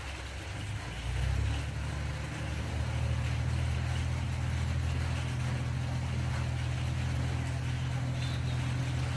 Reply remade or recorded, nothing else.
recorded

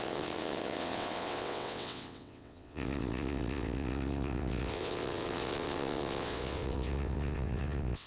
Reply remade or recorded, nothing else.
remade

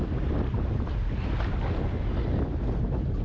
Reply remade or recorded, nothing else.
recorded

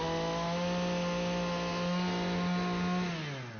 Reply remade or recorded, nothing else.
recorded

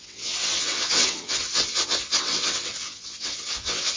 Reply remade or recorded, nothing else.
remade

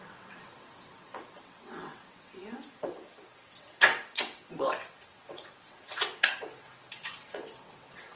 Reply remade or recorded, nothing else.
remade